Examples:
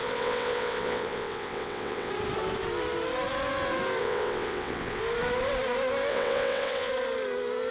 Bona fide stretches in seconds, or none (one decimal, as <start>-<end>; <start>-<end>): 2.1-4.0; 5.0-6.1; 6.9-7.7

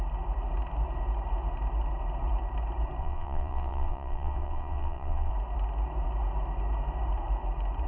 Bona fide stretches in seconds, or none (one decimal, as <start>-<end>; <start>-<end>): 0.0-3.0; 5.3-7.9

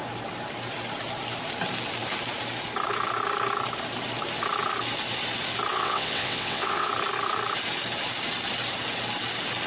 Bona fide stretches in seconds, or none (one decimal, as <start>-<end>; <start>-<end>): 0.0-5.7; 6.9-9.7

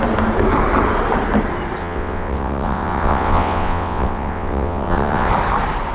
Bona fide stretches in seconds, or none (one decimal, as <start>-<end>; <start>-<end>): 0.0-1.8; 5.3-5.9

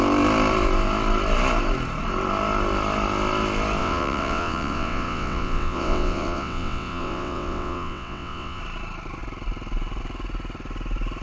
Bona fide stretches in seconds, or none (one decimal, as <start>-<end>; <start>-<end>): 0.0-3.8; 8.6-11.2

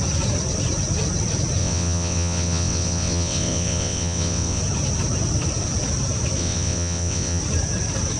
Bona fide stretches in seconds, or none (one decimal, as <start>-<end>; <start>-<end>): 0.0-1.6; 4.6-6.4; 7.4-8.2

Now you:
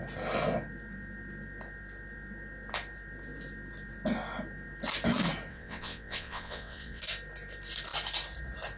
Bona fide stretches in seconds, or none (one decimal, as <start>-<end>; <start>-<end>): 0.0-5.5; 7.0-8.8

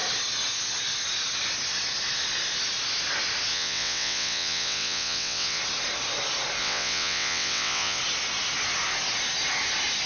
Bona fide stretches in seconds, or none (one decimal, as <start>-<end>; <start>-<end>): 0.0-3.5; 5.6-6.6; 8.0-10.1